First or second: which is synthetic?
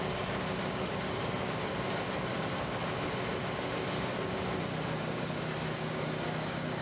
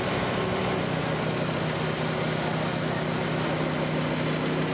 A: first